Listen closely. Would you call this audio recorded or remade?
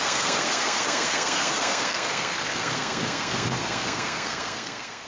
remade